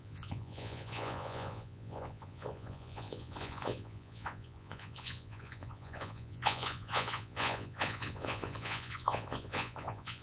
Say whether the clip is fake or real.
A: fake